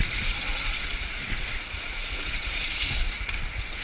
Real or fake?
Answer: fake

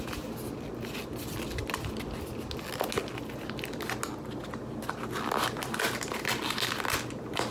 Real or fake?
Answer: real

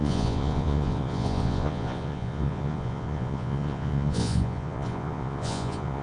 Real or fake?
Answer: fake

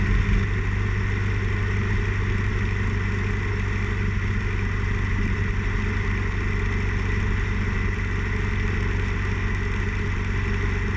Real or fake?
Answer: real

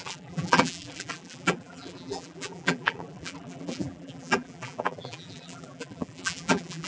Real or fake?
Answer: fake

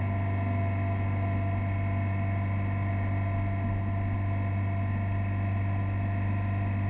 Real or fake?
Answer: real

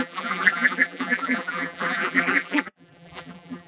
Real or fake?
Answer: fake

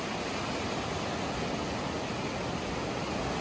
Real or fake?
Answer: real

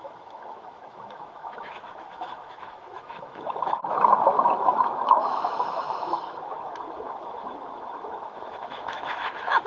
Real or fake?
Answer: fake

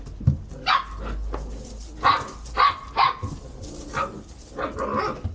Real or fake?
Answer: real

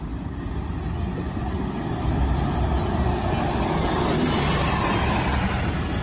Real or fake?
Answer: real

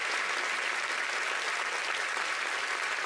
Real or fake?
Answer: real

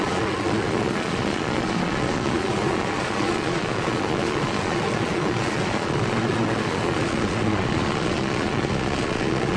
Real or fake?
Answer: fake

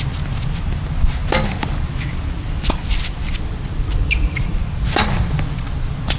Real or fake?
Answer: real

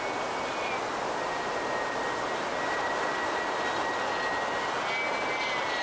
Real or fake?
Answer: real